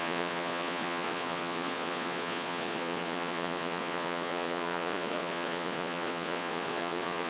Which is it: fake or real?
fake